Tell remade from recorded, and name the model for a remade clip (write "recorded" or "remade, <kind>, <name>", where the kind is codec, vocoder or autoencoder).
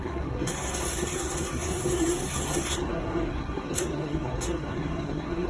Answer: remade, codec, SNAC